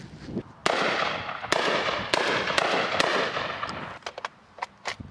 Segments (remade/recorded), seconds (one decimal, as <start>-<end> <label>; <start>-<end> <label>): 0.0-5.1 recorded